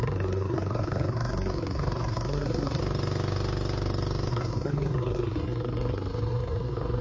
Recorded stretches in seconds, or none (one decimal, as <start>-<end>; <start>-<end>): 2.8-4.3